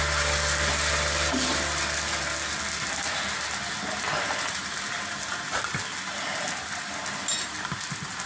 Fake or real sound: real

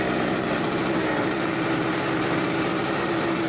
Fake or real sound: real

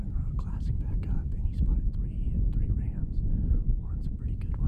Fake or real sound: real